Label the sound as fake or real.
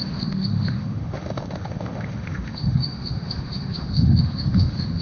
fake